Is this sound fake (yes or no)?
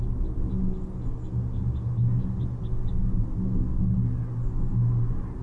no